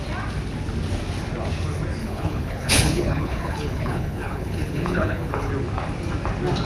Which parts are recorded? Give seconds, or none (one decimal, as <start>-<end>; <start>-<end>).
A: 0.0-2.0; 5.5-6.7